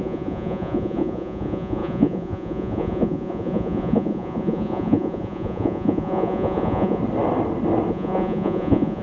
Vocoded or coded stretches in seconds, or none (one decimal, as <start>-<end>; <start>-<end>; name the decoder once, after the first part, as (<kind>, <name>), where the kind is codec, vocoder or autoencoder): 0.0-7.0 (vocoder, Vocos); 7.9-9.0